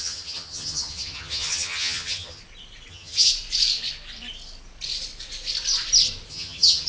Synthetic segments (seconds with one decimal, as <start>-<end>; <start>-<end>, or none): 0.0-2.4; 2.9-3.3; 6.3-6.9